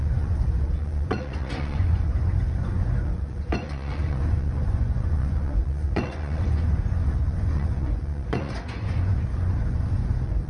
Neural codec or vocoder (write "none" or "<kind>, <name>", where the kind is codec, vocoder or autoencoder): vocoder, Vocos